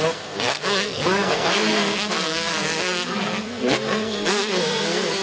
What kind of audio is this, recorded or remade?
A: remade